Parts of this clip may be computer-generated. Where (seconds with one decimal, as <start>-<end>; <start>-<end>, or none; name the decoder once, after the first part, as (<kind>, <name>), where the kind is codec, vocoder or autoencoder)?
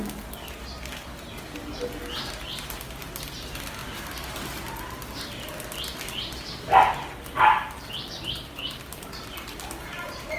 none